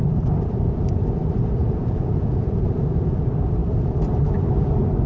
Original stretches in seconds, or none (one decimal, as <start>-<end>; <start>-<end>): 0.0-1.6; 2.6-5.1